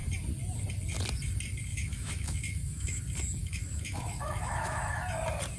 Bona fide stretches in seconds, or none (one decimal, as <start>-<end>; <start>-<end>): 0.0-1.7; 3.0-3.4; 5.0-5.6